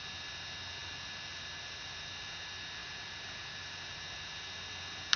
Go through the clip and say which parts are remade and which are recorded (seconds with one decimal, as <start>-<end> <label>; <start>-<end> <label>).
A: 0.0-0.8 recorded; 0.8-2.0 remade; 2.0-2.8 recorded; 2.8-4.0 remade; 4.0-5.2 recorded